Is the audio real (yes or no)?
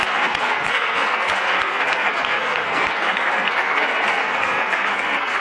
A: no